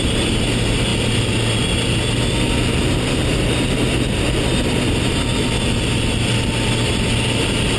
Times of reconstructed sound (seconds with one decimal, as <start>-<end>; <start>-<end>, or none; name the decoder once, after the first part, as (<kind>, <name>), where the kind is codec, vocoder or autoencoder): none